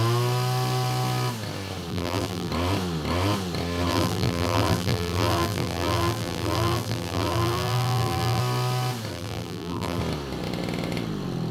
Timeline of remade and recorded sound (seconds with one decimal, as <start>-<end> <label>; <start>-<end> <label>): 0.0-1.9 recorded; 1.9-2.5 remade; 2.5-3.9 recorded; 3.9-8.4 remade; 8.4-9.1 recorded; 9.1-10.0 remade; 10.0-11.5 recorded